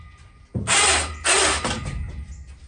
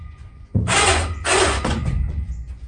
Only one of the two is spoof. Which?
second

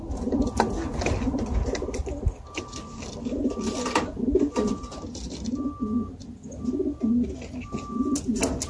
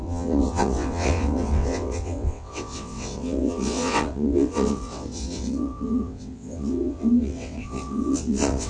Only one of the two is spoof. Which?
second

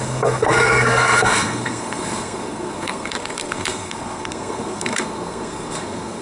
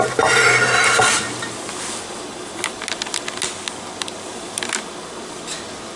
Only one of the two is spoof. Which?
first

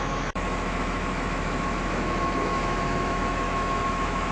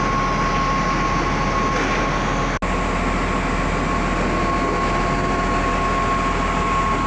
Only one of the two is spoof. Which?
first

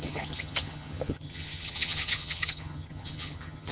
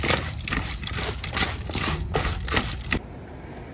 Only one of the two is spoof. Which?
first